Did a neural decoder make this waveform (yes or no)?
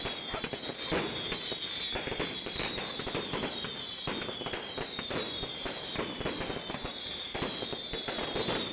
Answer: no